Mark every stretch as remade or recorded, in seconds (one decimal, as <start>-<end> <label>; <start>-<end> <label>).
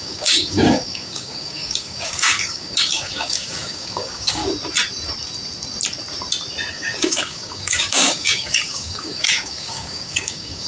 0.0-4.4 remade; 4.4-6.7 recorded; 6.7-10.7 remade